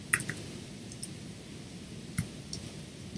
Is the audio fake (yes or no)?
no